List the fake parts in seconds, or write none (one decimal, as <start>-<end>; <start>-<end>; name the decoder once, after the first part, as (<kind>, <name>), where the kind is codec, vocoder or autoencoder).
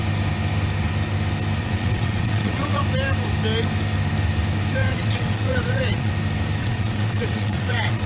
1.6-2.8 (vocoder, WaveNeXt); 4.8-6.1; 6.6-8.1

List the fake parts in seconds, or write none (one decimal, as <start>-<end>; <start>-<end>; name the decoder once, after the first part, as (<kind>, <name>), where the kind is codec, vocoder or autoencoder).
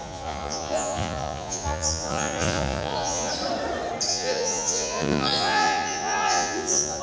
0.0-3.3 (vocoder, Vocos); 4.1-7.0